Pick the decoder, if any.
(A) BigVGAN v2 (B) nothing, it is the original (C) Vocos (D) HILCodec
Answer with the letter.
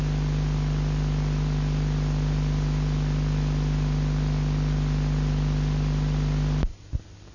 B